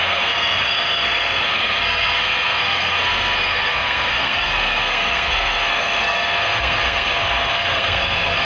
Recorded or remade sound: remade